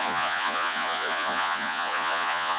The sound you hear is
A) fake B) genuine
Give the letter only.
A